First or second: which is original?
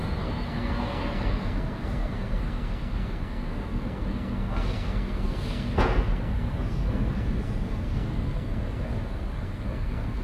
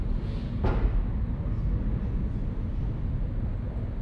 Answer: second